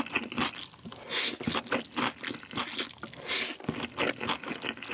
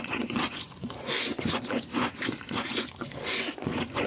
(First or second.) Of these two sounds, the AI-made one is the second